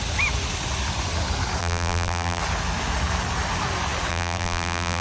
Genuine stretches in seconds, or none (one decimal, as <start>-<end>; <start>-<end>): 0.0-1.6; 2.4-4.1